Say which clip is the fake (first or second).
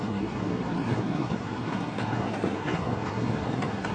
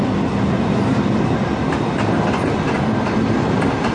first